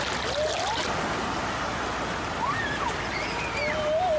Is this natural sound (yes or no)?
yes